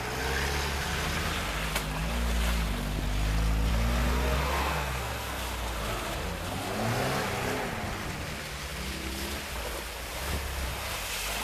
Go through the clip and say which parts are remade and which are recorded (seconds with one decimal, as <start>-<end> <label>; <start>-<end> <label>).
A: 0.0-4.6 recorded; 4.6-5.4 remade; 5.4-11.4 recorded